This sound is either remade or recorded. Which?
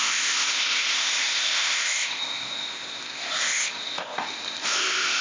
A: remade